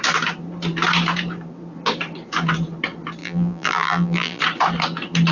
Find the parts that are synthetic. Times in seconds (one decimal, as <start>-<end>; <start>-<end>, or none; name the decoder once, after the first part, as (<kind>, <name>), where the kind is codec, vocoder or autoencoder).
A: 3.2-4.4 (vocoder, BigVGAN v2)